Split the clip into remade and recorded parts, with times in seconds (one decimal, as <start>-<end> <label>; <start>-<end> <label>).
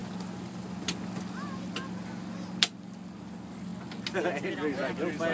0.0-5.3 recorded